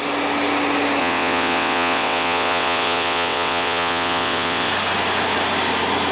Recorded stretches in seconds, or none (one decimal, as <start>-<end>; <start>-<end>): 0.0-1.0; 4.7-6.1

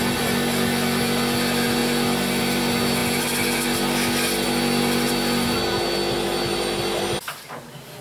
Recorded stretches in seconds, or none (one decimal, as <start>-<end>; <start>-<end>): 0.0-8.0

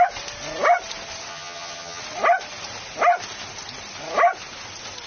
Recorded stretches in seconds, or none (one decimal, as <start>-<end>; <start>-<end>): 0.0-1.3; 2.0-5.1